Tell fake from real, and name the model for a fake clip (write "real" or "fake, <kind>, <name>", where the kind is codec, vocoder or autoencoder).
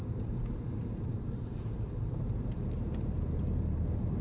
fake, vocoder, BigVGAN v2